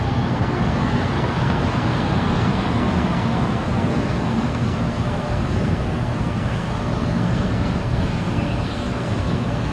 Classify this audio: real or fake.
fake